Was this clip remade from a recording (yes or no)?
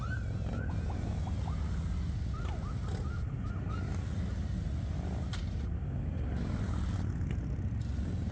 no